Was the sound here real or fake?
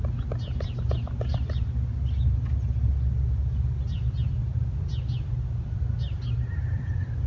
real